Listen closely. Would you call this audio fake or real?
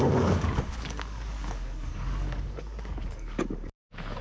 fake